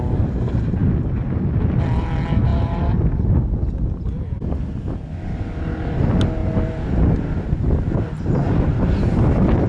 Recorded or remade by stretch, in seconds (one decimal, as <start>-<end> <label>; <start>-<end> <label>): 0.0-9.7 recorded